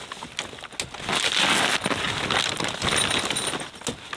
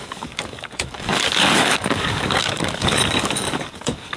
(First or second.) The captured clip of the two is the first